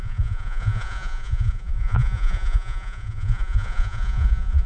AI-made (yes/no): yes